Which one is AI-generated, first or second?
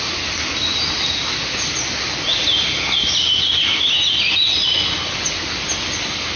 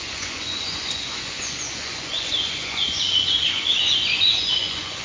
second